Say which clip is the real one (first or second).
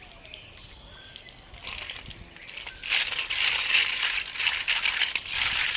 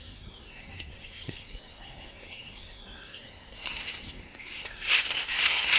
first